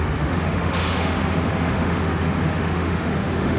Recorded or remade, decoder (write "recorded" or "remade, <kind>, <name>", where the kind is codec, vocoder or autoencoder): remade, autoencoder, DAC-VAE